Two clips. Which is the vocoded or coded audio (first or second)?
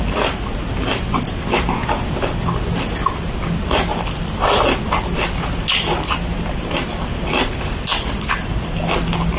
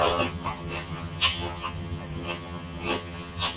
second